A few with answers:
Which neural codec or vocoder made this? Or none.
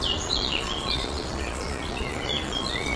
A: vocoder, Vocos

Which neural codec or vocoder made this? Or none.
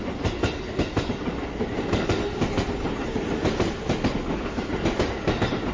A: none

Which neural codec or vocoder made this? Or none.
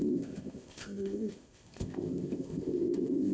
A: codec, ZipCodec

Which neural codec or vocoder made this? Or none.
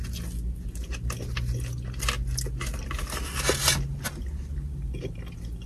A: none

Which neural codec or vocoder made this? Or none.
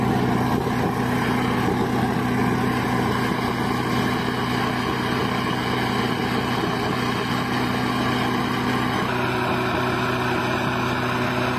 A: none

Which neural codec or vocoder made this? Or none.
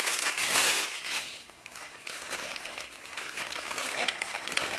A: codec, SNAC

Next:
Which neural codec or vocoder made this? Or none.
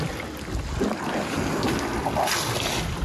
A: none